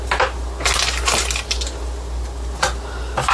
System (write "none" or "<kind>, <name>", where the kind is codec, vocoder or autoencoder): none